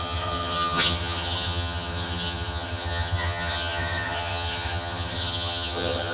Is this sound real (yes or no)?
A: no